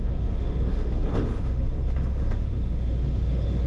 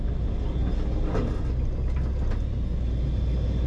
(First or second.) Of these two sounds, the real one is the second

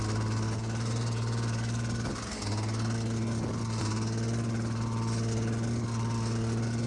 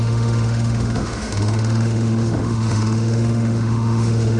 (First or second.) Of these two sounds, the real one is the first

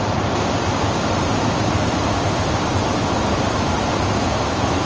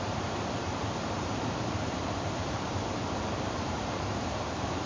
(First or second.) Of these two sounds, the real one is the first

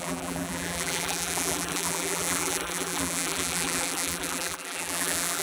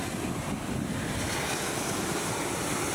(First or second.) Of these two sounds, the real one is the second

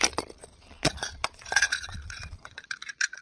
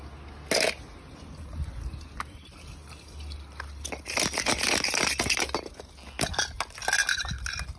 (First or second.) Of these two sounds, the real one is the second